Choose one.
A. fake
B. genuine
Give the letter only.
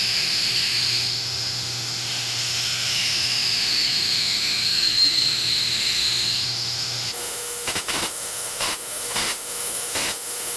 A